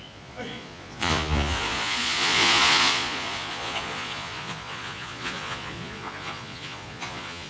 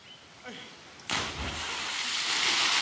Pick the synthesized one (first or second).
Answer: first